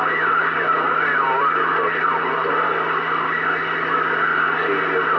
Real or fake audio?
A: real